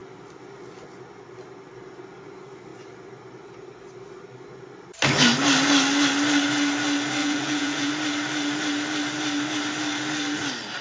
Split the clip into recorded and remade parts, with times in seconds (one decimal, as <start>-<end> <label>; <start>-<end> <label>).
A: 0.0-7.2 recorded; 7.2-7.9 remade; 7.9-10.8 recorded